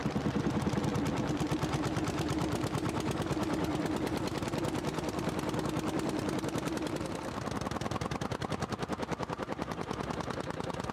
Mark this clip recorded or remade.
recorded